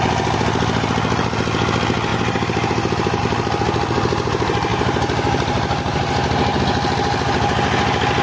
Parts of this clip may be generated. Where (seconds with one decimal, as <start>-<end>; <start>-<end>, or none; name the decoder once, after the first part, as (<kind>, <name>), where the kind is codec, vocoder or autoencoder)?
2.1-3.2 (vocoder, BigVGAN v2); 4.7-6.6